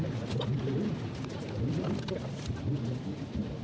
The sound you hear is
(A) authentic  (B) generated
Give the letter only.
A